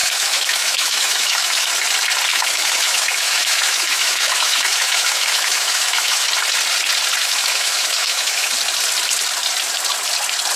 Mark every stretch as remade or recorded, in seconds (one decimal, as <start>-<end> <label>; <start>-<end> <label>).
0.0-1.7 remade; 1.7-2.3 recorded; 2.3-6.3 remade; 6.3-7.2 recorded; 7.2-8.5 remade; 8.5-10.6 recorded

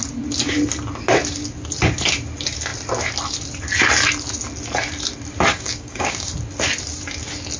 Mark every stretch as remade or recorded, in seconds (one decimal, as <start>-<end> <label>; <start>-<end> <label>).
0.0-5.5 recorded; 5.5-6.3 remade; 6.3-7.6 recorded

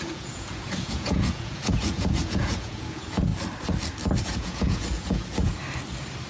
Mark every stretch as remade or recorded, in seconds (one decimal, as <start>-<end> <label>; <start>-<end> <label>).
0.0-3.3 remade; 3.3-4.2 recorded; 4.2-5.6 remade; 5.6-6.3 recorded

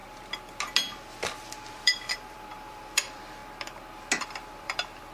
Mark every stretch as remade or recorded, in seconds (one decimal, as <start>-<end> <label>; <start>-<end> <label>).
0.0-1.7 recorded; 1.7-3.4 remade; 3.4-4.2 recorded; 4.2-5.1 remade

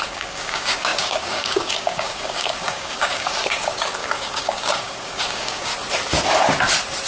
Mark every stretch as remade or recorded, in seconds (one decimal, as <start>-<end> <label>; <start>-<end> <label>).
0.0-5.7 remade; 5.7-7.1 recorded